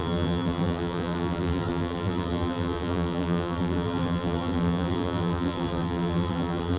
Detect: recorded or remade remade